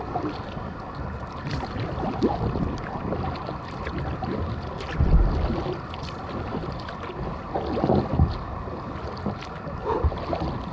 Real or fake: real